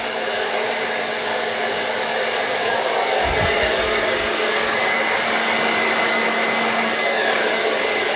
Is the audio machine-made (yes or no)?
yes